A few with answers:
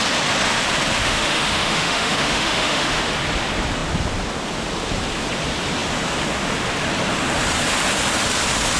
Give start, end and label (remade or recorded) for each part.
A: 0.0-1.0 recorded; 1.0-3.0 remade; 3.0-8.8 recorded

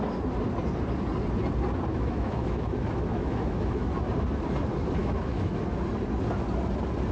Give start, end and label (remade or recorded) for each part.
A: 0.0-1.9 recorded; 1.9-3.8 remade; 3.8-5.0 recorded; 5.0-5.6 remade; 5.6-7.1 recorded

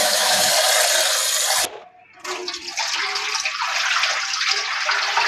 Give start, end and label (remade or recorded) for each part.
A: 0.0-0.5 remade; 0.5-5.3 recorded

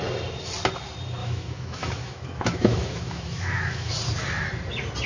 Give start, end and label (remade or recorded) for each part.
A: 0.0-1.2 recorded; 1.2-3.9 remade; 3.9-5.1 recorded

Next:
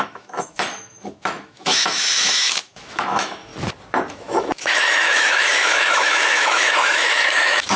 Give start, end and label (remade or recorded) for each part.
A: 0.0-3.5 remade; 3.5-4.1 recorded; 4.1-7.8 remade